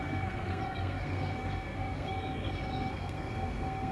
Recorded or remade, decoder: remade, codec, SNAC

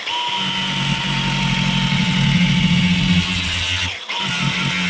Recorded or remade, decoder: recorded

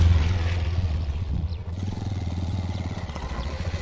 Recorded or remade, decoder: remade, vocoder, Vocos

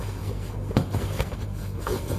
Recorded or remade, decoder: remade, codec, SNAC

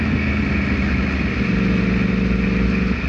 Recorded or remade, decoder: recorded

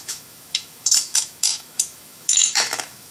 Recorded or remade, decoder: remade, autoencoder, DAC-VAE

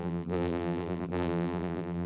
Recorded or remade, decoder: remade, vocoder, BigVGAN v2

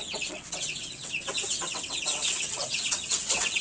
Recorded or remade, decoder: remade, vocoder, WaveNeXt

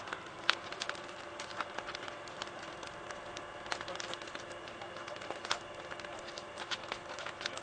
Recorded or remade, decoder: recorded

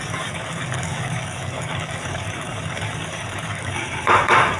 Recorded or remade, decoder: remade, codec, DAC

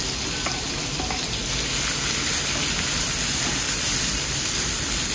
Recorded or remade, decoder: recorded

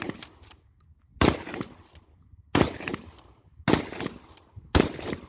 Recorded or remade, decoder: recorded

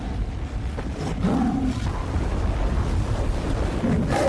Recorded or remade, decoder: recorded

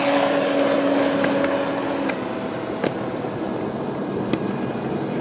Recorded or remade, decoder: recorded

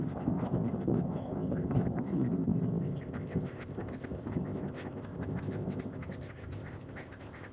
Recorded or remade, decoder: remade, codec, ZipCodec